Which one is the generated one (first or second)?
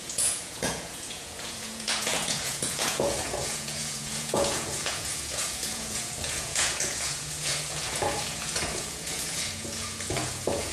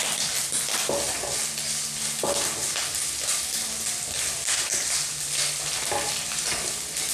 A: first